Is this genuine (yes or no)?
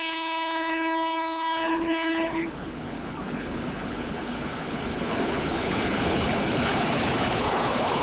no